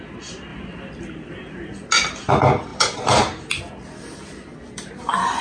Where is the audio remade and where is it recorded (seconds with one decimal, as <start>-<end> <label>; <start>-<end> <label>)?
0.0-5.4 recorded